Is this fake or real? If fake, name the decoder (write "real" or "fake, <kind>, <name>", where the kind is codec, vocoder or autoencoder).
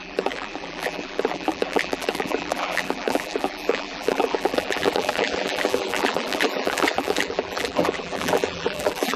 fake, vocoder, BigVGAN v2